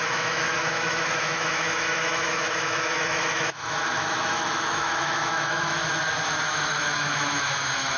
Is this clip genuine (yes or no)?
no